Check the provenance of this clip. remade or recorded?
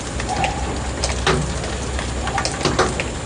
recorded